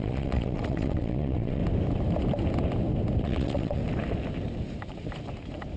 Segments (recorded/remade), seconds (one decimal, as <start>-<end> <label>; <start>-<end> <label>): 0.0-1.6 remade; 1.6-3.2 recorded; 3.2-3.8 remade; 3.8-5.8 recorded